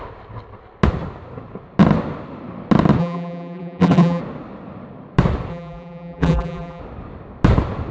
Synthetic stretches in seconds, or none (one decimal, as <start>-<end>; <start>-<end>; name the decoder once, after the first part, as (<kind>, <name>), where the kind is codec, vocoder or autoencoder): 3.0-4.2 (vocoder, BigVGAN v2); 5.5-6.8